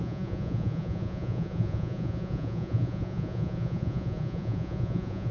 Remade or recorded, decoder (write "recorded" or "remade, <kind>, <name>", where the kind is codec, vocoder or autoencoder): remade, vocoder, Vocos